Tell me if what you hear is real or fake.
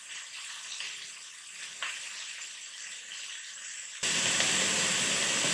real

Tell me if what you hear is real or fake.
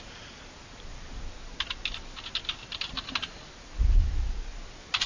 real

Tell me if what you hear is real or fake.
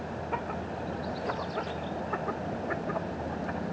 real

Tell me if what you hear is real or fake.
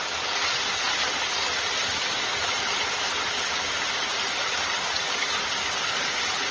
real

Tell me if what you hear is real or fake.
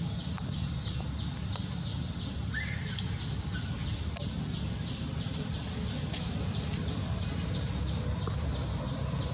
real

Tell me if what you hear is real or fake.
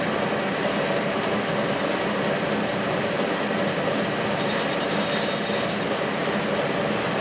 real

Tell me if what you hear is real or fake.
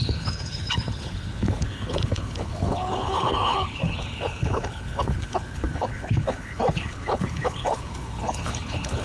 fake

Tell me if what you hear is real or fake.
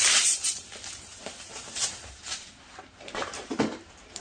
fake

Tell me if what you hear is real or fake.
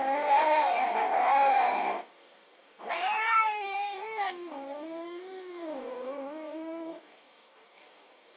fake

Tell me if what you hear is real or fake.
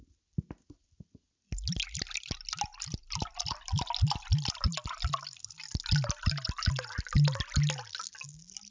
real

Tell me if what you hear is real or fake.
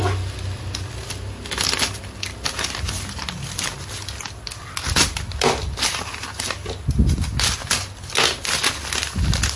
real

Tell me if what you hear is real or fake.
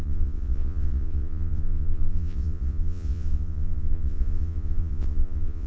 fake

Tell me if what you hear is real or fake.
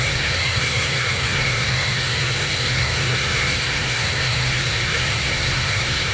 fake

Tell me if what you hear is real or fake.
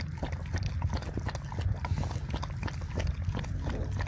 real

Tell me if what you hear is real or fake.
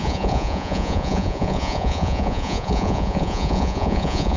fake